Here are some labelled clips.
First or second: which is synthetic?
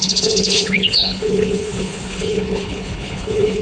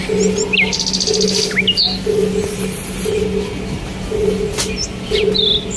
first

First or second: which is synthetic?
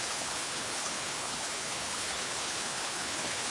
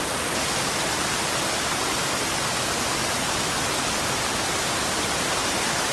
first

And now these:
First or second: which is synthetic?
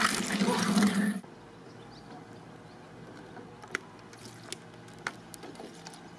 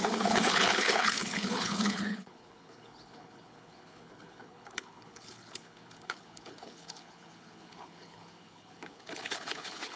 second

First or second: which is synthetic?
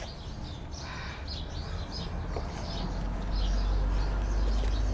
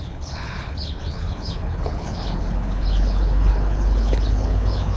second